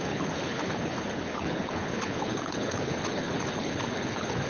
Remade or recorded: remade